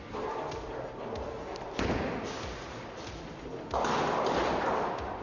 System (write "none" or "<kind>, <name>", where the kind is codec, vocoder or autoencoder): none